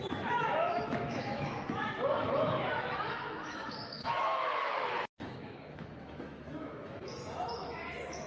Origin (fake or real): fake